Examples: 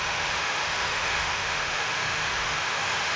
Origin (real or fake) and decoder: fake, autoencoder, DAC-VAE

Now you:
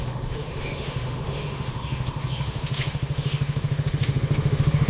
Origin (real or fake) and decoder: fake, autoencoder, DAC-VAE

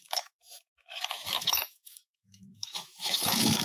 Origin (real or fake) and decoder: fake, autoencoder, DAC-VAE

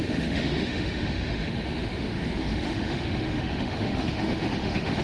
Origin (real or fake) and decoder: fake, autoencoder, DAC-VAE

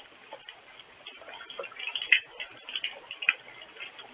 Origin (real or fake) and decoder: real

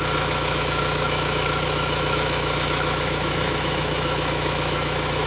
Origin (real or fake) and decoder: fake, autoencoder, DAC-VAE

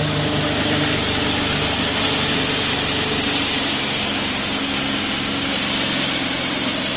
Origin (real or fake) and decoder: real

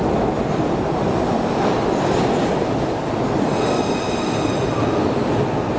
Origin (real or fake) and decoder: real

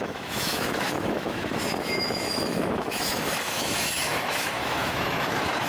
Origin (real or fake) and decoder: fake, autoencoder, DAC-VAE